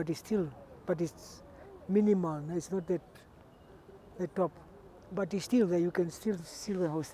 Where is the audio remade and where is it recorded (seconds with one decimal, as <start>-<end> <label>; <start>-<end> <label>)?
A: 0.0-6.4 recorded; 6.4-7.1 remade